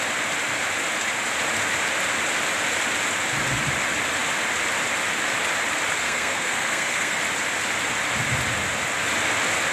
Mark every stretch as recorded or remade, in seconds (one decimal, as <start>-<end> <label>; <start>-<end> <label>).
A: 0.0-6.0 recorded; 6.0-7.2 remade; 7.2-9.7 recorded